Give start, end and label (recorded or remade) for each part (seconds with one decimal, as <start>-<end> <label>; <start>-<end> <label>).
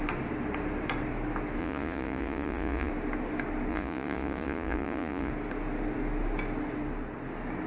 0.0-1.6 recorded; 1.6-2.9 remade; 2.9-3.7 recorded; 3.7-5.3 remade; 5.3-7.7 recorded